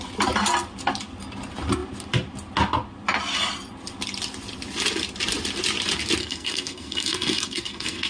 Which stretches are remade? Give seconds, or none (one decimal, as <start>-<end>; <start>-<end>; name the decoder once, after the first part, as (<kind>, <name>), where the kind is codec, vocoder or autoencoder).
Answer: 6.2-8.1 (codec, SNAC)